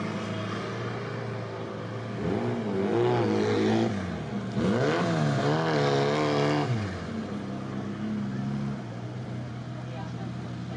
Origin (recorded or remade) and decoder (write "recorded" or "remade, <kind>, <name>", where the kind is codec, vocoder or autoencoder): recorded